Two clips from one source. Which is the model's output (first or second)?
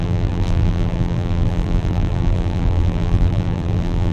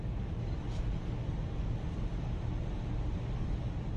first